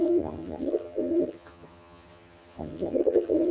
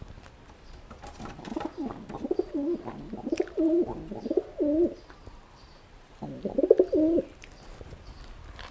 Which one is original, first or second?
second